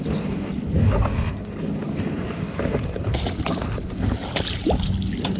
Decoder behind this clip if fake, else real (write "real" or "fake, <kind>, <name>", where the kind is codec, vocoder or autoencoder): real